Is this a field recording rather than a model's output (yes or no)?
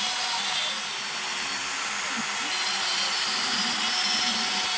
yes